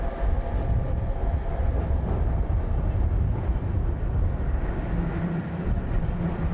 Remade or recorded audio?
recorded